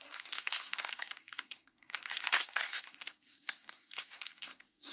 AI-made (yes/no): yes